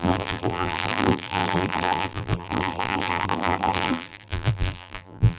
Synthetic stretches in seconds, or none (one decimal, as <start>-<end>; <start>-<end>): 0.0-5.4